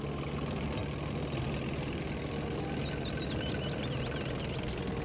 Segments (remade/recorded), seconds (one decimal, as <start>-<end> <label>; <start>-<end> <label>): 0.0-5.0 recorded